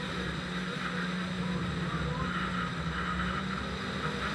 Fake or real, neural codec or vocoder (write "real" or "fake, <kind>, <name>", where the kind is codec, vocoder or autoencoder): real